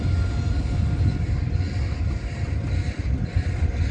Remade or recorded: recorded